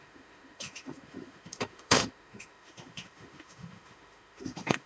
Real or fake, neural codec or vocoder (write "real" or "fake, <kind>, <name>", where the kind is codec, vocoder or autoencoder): fake, autoencoder, DAC-VAE